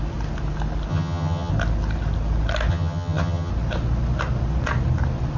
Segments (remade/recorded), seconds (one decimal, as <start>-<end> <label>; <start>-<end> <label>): 0.0-0.9 recorded; 0.9-1.5 remade; 1.5-2.7 recorded; 2.7-3.5 remade; 3.5-5.4 recorded